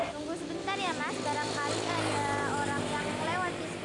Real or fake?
real